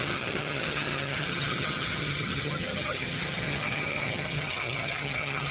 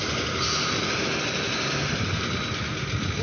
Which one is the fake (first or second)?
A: first